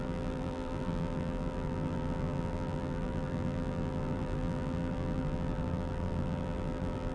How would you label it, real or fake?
fake